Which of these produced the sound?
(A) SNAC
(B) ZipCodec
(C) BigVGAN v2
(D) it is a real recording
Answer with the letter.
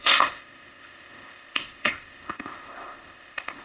B